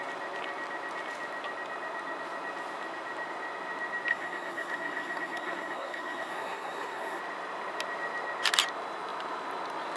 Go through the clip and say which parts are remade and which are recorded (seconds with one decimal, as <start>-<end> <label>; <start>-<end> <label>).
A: 0.0-4.1 recorded; 4.1-7.2 remade; 7.2-10.0 recorded